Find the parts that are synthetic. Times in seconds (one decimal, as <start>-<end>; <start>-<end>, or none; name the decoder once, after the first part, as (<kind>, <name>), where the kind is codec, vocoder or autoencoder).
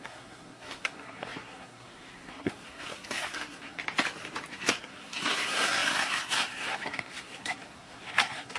0.0-3.8 (codec, SNAC); 4.5-8.6